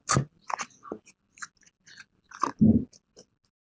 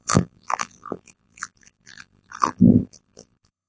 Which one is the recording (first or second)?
first